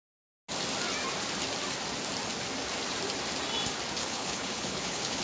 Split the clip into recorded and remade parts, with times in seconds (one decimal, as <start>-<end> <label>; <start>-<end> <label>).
0.0-4.0 recorded; 4.0-5.2 remade